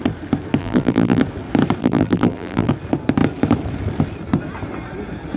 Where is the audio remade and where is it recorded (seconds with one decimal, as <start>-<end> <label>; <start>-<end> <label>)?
0.0-0.6 recorded; 0.6-1.2 remade; 1.2-1.8 recorded; 1.8-2.7 remade; 2.7-5.4 recorded